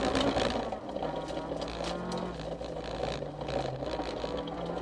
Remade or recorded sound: recorded